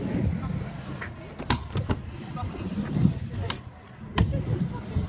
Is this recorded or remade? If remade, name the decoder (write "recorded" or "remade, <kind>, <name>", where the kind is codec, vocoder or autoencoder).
recorded